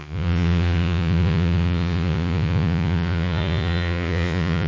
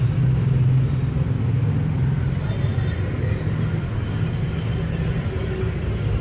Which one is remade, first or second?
first